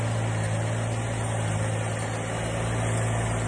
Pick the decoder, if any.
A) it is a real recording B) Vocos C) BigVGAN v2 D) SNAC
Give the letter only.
A